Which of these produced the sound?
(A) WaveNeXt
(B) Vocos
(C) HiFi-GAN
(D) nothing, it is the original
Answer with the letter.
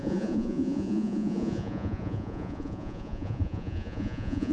B